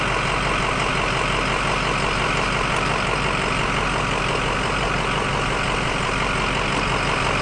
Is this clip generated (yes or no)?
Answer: no